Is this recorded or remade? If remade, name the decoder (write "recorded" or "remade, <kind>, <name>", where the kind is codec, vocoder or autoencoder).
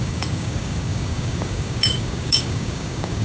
remade, codec, DAC